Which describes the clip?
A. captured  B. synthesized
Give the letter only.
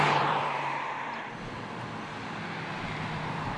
B